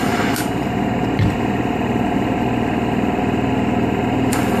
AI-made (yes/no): no